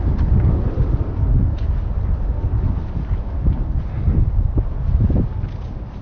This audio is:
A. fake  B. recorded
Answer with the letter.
B